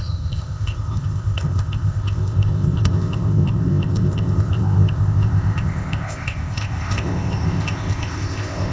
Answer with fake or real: fake